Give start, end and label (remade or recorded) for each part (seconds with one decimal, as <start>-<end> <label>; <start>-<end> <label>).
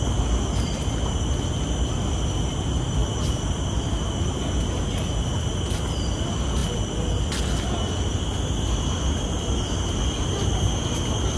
0.0-3.0 recorded; 3.0-3.9 remade; 3.9-11.4 recorded